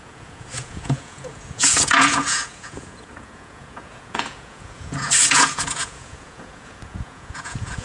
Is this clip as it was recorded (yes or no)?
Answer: no